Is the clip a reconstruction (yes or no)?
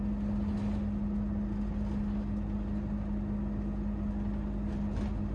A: no